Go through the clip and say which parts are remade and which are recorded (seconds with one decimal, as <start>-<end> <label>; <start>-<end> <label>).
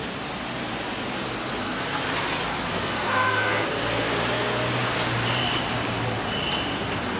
0.0-1.6 recorded; 1.6-2.0 remade; 2.0-2.7 recorded; 2.7-4.1 remade; 4.1-7.2 recorded